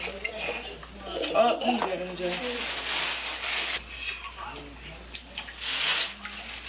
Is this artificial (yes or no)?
no